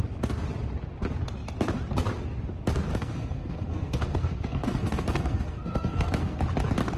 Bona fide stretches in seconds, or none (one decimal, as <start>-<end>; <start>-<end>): 0.0-2.9; 6.4-7.0